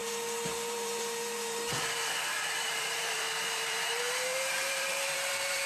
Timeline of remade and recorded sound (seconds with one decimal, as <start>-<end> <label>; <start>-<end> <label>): 0.0-5.7 remade